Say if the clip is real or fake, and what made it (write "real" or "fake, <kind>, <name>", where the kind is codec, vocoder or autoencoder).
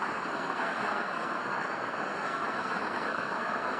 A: fake, codec, SNAC